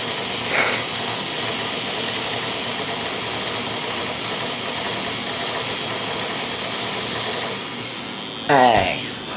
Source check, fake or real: real